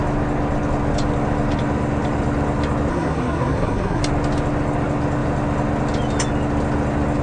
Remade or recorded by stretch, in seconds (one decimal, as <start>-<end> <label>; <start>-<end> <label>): 0.0-2.9 recorded; 2.9-4.0 remade; 4.0-7.2 recorded